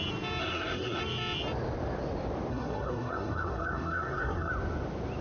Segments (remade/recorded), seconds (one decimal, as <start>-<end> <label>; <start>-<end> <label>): 0.0-0.4 recorded; 0.4-1.0 remade; 1.0-2.5 recorded; 2.5-4.5 remade; 4.5-5.2 recorded